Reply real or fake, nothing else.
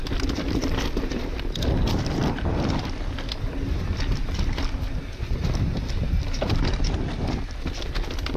real